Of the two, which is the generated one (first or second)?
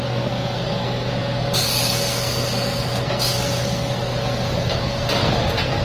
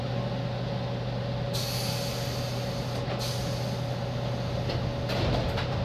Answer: first